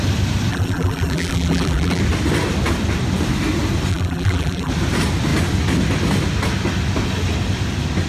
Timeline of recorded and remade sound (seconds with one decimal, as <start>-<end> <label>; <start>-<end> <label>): 0.0-0.5 recorded; 0.5-2.0 remade; 2.0-3.9 recorded; 3.9-4.7 remade; 4.7-8.1 recorded